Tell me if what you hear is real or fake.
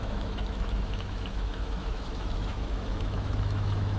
fake